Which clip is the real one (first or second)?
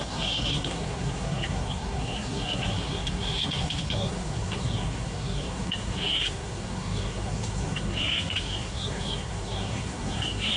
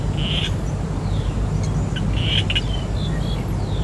second